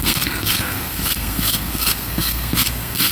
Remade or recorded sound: remade